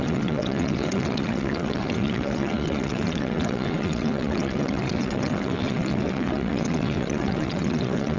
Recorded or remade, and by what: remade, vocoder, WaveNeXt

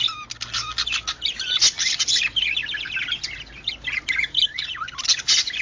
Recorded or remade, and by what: recorded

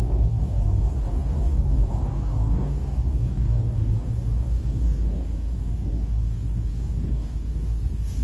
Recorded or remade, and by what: remade, codec, DAC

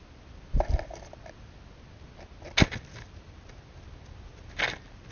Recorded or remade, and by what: recorded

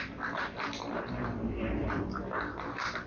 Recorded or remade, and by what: remade, vocoder, BigVGAN v2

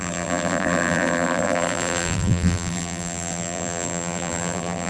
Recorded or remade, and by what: remade, vocoder, BigVGAN v2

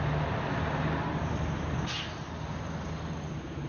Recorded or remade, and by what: recorded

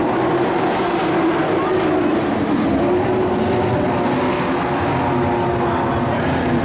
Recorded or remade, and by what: recorded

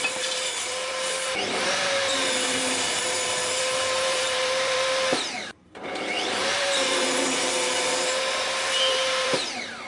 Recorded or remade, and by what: remade, vocoder, BigVGAN v2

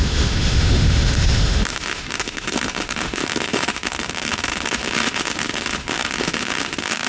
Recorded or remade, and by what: remade, autoencoder, DAC-VAE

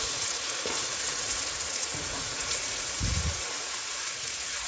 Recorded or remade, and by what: remade, vocoder, Vocos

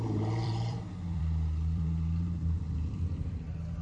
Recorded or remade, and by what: remade, vocoder, BigVGAN v2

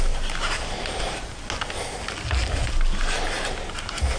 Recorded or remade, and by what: recorded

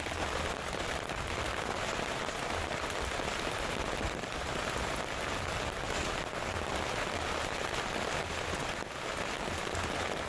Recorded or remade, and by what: recorded